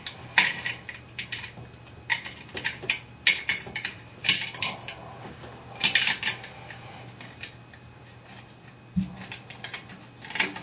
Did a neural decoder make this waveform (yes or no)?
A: no